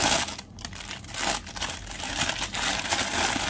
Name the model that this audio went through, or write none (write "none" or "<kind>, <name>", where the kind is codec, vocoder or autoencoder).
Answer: none